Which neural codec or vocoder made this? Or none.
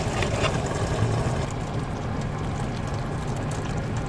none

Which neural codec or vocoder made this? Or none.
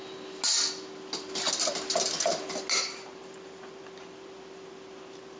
none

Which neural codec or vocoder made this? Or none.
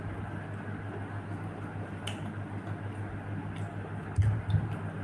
none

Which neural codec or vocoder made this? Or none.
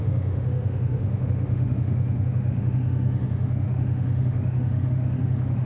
autoencoder, DAC-VAE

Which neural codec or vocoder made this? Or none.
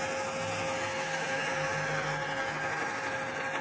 none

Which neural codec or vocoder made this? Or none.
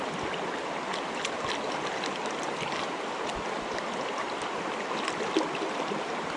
none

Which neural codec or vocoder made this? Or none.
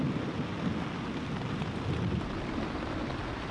none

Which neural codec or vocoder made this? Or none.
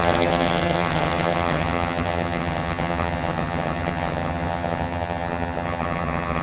vocoder, HiFi-GAN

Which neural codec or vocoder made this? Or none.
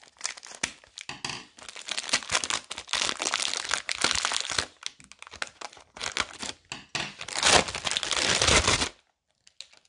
none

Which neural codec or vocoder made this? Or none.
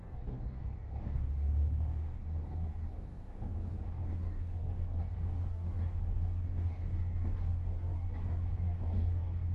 codec, DAC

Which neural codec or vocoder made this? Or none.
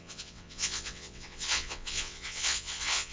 vocoder, WaveNeXt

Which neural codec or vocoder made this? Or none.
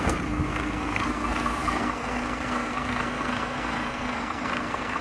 codec, SNAC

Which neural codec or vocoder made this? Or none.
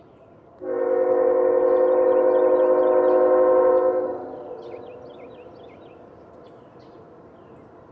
none